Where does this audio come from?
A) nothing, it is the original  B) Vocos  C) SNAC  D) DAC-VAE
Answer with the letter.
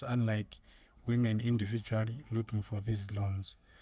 C